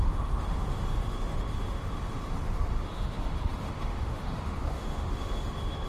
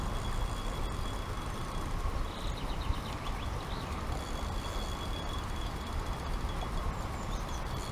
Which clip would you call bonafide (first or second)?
second